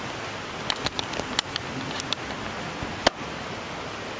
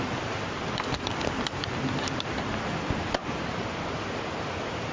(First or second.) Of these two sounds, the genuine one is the first